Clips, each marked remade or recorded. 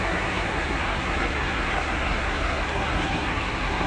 remade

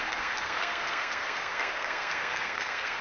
remade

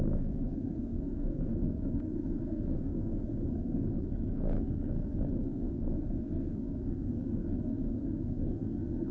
remade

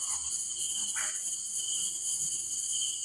recorded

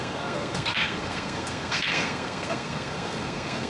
remade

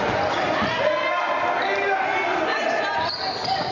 recorded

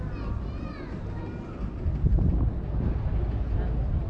recorded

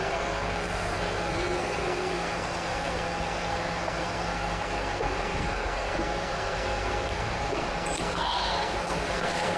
remade